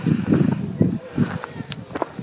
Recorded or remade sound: remade